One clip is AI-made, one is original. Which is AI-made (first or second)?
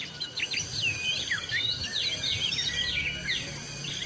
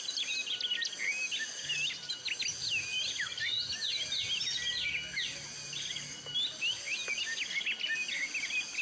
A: first